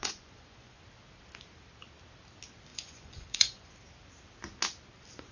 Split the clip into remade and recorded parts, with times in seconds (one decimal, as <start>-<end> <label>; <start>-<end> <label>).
0.0-0.8 remade; 0.8-2.7 recorded; 2.7-3.7 remade; 3.7-5.3 recorded